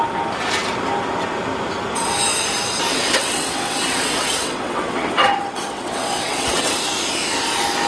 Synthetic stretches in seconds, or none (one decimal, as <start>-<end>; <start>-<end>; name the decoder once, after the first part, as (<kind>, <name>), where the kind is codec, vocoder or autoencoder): 2.9-6.7 (vocoder, WaveNeXt)